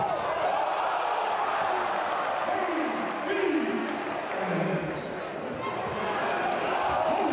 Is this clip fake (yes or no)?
no